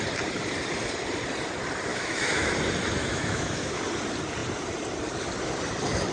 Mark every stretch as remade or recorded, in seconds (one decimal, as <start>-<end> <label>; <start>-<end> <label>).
0.0-1.9 recorded; 1.9-2.5 remade; 2.5-3.0 recorded; 3.0-3.8 remade; 3.8-6.1 recorded